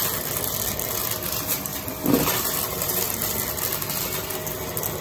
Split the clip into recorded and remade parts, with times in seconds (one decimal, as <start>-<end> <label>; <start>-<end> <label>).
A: 0.0-1.7 recorded; 1.7-3.5 remade; 3.5-5.0 recorded